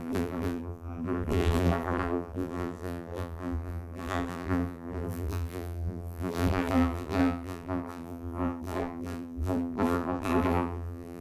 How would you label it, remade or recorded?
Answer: remade